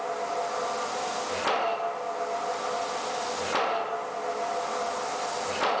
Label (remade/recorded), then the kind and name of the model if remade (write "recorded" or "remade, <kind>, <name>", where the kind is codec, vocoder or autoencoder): recorded